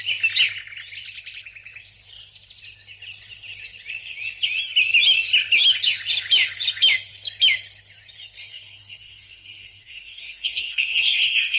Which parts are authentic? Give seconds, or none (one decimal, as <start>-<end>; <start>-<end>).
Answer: 0.0-8.4